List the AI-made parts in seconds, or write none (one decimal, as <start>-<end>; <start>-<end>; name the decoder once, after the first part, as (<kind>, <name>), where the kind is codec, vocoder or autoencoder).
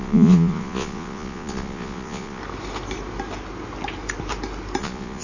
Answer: 0.0-2.4 (vocoder, Vocos); 4.8-5.2